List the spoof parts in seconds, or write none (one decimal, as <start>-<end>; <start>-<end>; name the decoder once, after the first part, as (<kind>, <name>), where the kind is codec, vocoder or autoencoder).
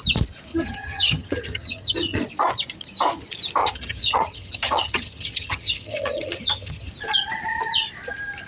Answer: 0.5-2.2 (vocoder, HiFi-GAN); 3.6-6.9